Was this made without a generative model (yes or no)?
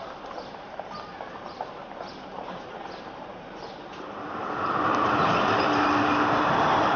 no